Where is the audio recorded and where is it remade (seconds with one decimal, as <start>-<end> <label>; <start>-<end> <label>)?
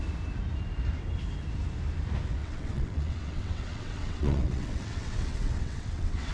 0.0-2.4 recorded; 2.4-6.3 remade